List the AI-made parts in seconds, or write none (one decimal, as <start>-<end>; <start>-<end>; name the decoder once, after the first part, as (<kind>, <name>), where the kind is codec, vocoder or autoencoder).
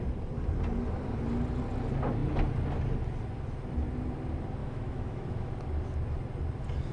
4.6-5.5 (autoencoder, DAC-VAE)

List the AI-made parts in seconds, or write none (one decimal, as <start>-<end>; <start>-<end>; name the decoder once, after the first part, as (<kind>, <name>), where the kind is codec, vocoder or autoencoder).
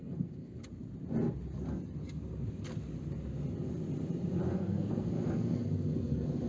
0.0-0.6 (codec, SNAC); 4.5-6.5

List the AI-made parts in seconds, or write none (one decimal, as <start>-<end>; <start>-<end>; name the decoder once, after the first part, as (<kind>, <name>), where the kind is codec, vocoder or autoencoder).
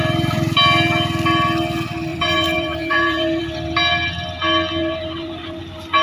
2.1-3.4 (vocoder, BigVGAN v2); 4.8-5.6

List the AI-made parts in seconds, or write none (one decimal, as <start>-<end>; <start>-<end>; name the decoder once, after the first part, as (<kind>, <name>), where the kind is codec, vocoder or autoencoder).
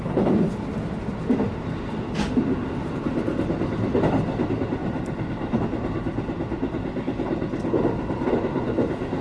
4.8-5.6 (vocoder, BigVGAN v2)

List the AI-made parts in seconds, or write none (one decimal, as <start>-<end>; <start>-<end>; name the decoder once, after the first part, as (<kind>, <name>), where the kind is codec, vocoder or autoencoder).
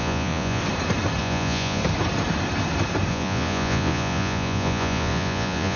0.0-0.6 (vocoder, Vocos); 1.2-1.8; 3.1-5.8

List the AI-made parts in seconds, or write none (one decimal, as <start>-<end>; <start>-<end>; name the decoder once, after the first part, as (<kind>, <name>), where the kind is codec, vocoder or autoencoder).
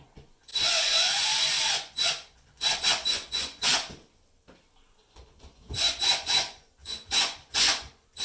0.0-3.7 (vocoder, Vocos); 4.9-8.2